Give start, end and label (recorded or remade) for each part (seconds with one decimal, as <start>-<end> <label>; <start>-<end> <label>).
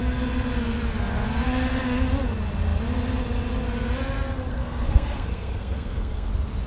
0.0-4.5 recorded; 4.5-6.3 remade; 6.3-6.7 recorded